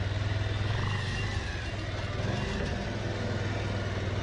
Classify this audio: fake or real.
real